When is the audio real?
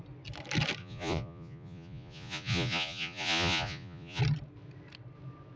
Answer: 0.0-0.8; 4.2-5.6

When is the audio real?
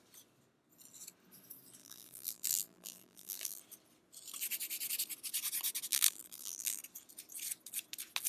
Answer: 0.0-1.8; 3.6-5.9; 6.8-8.3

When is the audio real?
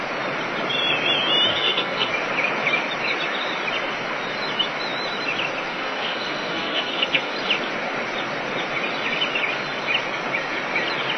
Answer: 0.0-1.5; 2.1-5.7; 7.3-11.2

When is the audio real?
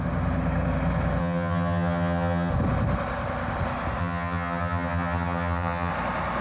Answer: 0.0-1.2; 2.5-4.0; 5.9-6.4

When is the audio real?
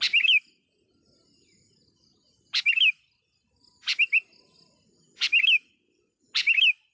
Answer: 0.0-6.9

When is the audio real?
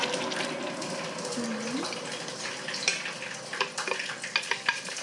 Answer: 0.0-5.0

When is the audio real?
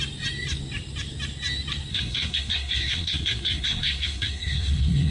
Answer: 0.0-1.9